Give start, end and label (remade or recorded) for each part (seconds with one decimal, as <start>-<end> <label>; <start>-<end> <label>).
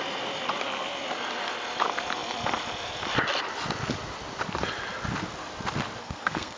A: 0.0-6.0 recorded; 6.0-6.6 remade